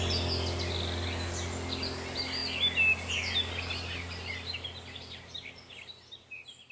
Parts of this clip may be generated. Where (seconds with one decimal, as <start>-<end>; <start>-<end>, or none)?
none